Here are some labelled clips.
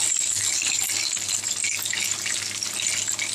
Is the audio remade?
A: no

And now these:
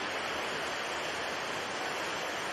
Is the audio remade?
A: no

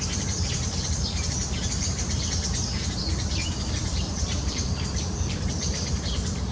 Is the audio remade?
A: yes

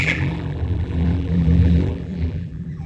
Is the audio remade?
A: yes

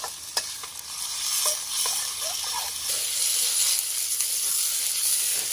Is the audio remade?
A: no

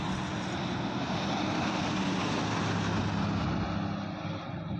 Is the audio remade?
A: no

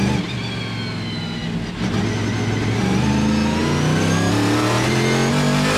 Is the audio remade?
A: no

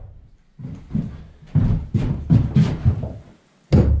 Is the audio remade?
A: no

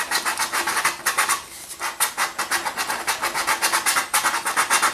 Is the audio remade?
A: no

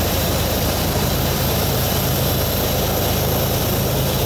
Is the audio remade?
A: yes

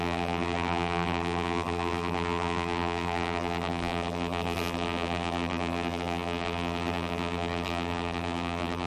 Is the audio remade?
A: yes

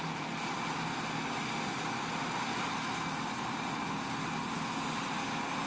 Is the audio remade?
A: no